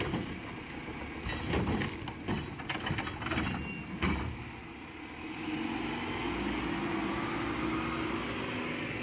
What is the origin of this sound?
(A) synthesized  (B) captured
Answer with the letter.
B